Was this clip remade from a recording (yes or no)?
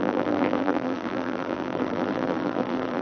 yes